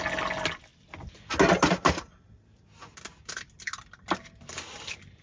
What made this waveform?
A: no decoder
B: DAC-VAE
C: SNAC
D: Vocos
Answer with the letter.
A